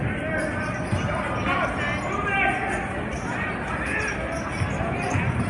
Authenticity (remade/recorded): recorded